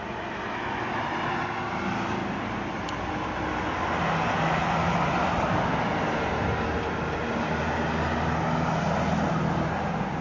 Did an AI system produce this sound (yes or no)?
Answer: no